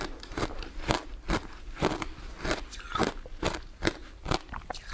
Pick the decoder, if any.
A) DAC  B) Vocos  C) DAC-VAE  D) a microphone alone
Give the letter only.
D